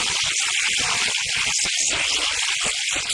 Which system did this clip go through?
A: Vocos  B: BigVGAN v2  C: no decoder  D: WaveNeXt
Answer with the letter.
C